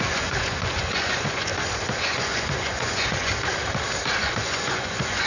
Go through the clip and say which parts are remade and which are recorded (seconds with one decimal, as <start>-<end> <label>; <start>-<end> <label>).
0.0-1.5 remade; 1.5-2.0 recorded; 2.0-3.3 remade; 3.3-4.2 recorded; 4.2-5.3 remade